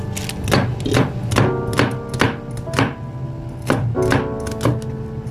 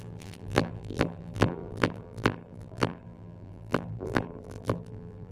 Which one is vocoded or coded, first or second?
second